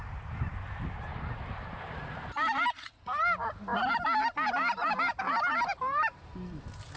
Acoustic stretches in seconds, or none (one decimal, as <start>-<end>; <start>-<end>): 0.0-0.5; 3.0-5.5; 6.3-7.0